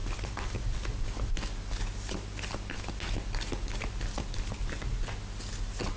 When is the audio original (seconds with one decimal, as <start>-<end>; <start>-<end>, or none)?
0.0-6.0